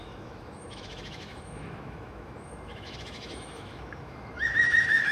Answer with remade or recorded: remade